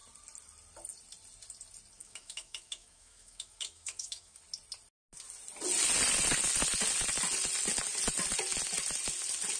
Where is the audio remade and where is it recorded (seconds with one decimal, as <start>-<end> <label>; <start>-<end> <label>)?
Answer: 0.0-2.0 recorded; 2.0-4.4 remade; 4.4-9.6 recorded